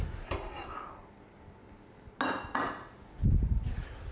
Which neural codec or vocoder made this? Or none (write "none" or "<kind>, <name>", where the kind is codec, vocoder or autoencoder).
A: none